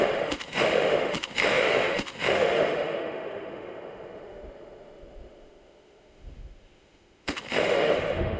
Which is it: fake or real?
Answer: fake